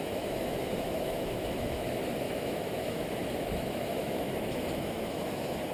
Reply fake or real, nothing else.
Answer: fake